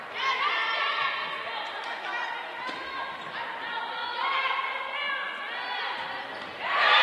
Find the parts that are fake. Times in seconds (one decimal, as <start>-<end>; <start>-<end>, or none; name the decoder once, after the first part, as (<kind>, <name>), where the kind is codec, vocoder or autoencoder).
0.0-1.2 (vocoder, BigVGAN v2); 1.7-2.1; 2.7-4.0; 5.8-7.0